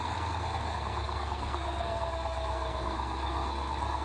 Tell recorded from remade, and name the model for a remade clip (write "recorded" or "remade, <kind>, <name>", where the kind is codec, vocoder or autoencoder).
remade, codec, SNAC